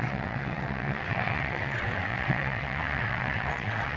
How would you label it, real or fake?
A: fake